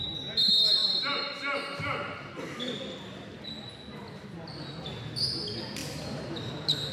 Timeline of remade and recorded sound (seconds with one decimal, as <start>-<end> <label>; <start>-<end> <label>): 0.0-6.9 recorded